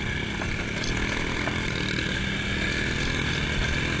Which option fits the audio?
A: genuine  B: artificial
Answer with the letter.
A